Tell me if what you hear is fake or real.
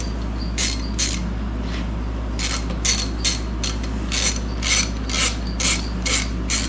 real